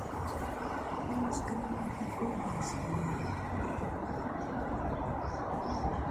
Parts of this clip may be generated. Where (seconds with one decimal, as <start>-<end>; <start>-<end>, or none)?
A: 0.0-1.4; 5.1-6.1